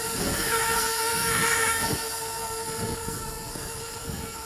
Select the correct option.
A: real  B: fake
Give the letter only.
B